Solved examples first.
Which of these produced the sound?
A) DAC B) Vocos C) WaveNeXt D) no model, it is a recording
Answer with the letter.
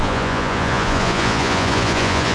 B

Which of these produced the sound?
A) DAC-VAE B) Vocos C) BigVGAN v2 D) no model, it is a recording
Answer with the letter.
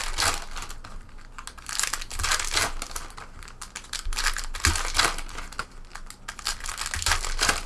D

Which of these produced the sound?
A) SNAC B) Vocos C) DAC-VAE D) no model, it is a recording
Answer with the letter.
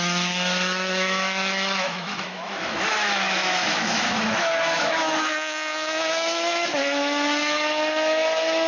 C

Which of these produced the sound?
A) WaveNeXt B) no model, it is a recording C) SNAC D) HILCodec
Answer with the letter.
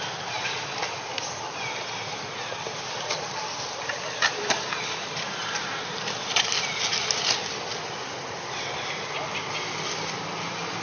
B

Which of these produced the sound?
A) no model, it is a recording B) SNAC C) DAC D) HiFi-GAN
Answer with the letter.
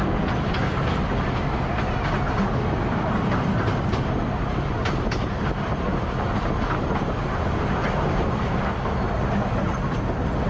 A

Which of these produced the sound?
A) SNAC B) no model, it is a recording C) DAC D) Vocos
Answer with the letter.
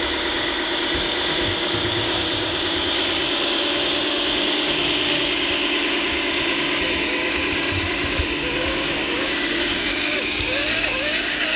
C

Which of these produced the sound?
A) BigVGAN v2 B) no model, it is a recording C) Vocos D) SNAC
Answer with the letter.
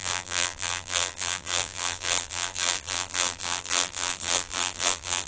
A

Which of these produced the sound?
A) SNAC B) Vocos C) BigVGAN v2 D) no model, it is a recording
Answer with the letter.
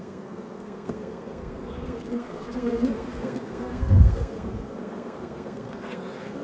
A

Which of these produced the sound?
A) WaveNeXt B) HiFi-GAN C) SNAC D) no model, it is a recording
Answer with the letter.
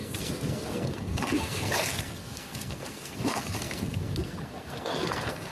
C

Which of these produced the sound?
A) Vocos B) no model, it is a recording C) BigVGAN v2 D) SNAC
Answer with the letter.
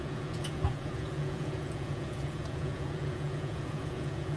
A